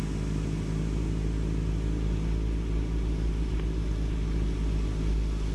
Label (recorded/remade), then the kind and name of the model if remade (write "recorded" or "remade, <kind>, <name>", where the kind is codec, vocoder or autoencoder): recorded